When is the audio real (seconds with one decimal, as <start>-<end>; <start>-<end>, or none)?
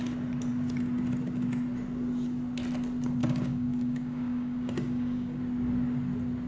0.0-3.2; 5.4-6.5